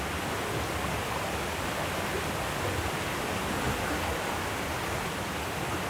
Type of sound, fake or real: real